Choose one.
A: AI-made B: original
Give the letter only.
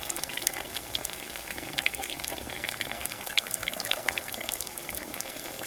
A